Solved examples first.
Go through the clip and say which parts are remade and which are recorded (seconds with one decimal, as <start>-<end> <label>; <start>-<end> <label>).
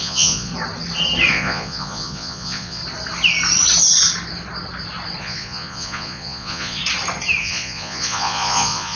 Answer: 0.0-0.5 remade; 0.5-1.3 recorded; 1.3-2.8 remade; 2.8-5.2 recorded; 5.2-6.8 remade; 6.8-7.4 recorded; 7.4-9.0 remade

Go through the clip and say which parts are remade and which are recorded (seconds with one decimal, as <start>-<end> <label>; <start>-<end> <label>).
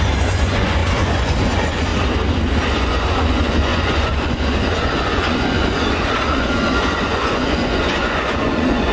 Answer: 0.0-1.9 remade; 1.9-2.7 recorded; 2.7-8.9 remade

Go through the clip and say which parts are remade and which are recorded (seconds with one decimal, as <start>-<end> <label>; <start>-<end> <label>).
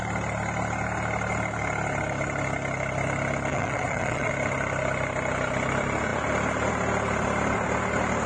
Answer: 0.0-3.5 recorded; 3.5-4.3 remade; 4.3-8.3 recorded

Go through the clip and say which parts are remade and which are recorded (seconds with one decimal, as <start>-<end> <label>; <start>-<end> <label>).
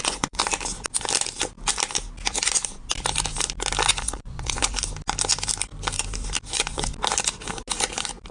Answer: 0.0-0.4 remade; 0.4-3.9 recorded; 3.9-4.6 remade; 4.6-6.5 recorded; 6.5-6.9 remade; 6.9-8.3 recorded